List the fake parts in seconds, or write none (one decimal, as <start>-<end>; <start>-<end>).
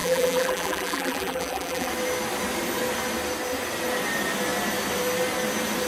0.0-1.9